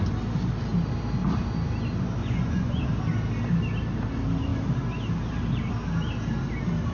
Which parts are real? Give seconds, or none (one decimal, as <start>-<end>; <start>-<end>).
0.0-2.2; 2.8-6.9

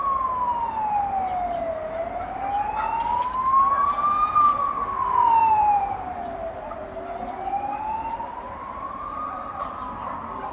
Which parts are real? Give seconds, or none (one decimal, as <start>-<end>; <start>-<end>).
0.0-5.4; 9.6-10.5